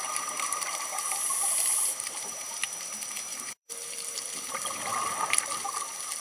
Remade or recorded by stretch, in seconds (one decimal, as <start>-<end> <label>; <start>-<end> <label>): 0.0-1.4 recorded; 1.4-2.3 remade; 2.3-3.3 recorded; 3.3-4.2 remade; 4.2-6.2 recorded